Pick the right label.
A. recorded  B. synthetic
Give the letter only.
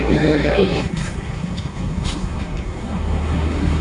B